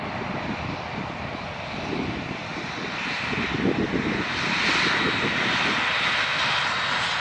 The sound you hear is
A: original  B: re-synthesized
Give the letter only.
A